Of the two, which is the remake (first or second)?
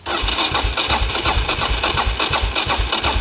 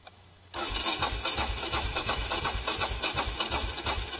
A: second